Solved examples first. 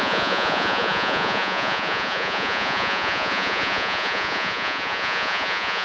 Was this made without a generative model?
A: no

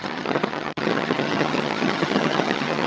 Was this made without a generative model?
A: no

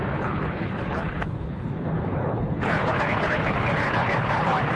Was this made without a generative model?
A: no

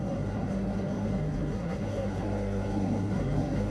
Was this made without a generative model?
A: no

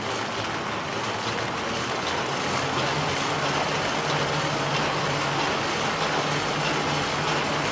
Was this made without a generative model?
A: yes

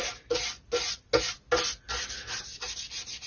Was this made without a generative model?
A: yes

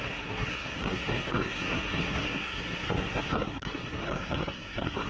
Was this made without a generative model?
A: no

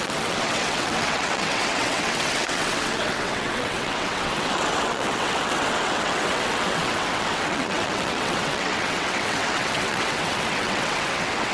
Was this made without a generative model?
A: no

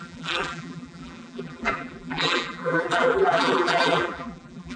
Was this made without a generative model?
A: no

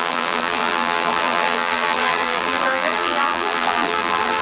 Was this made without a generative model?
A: no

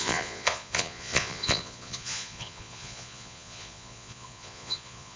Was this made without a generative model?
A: no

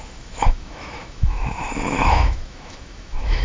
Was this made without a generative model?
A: no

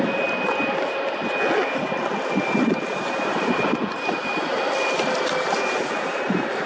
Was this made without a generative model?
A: yes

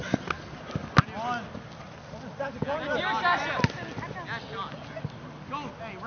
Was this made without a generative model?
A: yes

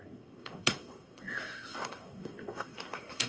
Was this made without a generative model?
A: no